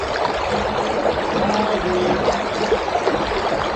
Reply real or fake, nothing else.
real